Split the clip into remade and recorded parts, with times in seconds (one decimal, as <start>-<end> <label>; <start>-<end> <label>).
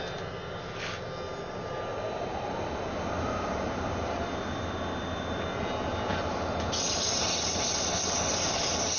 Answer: 0.0-1.9 recorded; 1.9-4.7 remade; 4.7-6.1 recorded; 6.1-7.2 remade; 7.2-9.0 recorded